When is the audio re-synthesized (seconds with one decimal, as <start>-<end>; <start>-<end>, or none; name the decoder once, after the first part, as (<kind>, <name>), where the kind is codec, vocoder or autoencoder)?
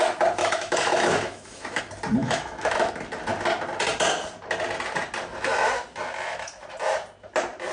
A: 0.4-1.8 (autoencoder, DAC-VAE); 2.2-2.9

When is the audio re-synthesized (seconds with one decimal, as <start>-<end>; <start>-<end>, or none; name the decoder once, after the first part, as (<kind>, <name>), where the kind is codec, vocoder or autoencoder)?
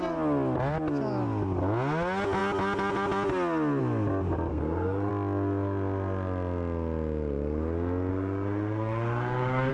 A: 4.5-5.1 (codec, SNAC); 8.1-9.7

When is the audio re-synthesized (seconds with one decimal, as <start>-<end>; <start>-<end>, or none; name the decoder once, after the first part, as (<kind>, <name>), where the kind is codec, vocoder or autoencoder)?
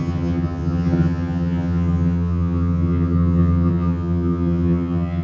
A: 0.0-5.2 (vocoder, HiFi-GAN)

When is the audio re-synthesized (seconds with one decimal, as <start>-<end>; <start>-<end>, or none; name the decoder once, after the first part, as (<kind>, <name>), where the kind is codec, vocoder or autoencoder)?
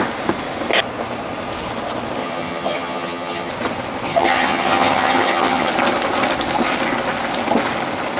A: 2.2-3.5 (vocoder, HiFi-GAN); 4.1-5.7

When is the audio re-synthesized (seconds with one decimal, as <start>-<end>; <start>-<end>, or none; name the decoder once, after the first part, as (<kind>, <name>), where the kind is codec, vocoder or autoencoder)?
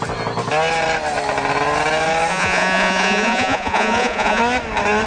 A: 2.3-4.4 (vocoder, Vocos)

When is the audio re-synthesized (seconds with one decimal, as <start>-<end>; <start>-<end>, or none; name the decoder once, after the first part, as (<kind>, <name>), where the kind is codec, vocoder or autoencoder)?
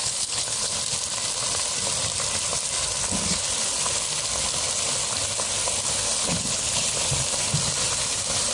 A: 0.0-0.7 (codec, HILCodec); 6.2-6.9